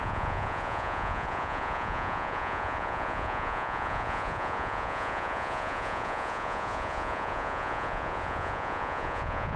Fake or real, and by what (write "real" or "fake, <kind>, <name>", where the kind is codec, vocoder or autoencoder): fake, vocoder, Vocos